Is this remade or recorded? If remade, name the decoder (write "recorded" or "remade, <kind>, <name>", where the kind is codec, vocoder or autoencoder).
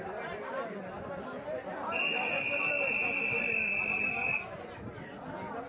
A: recorded